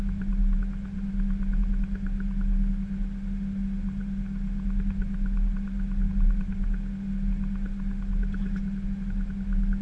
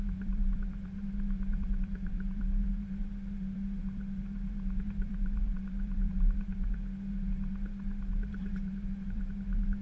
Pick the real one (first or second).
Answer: first